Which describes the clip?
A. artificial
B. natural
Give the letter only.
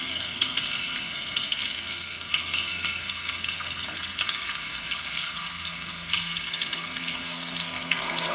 A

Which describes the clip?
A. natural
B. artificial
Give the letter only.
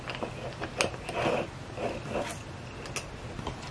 A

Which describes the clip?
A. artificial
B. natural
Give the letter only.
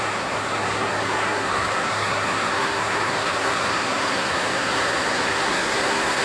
A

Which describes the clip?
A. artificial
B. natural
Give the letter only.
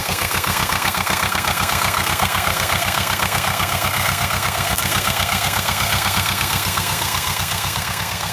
A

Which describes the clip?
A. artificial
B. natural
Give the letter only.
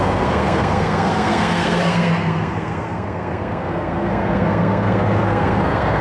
A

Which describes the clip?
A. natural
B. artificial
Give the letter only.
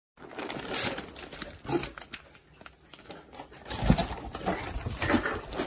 A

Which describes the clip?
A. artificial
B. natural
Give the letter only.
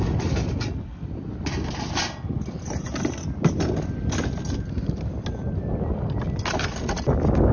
B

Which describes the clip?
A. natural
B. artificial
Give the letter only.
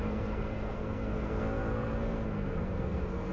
B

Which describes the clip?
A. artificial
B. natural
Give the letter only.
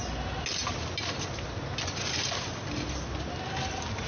B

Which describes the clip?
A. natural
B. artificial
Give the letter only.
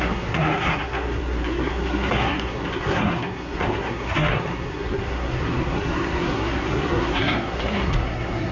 B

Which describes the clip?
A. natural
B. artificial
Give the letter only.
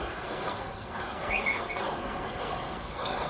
B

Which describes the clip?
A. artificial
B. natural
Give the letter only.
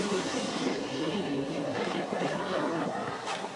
A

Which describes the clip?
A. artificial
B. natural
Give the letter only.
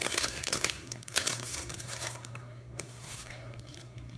A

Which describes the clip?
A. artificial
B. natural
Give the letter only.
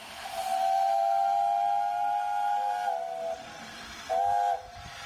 B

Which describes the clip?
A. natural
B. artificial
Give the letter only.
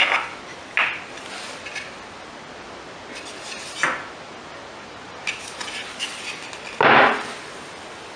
A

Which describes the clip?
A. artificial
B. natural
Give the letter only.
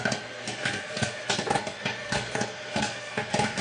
A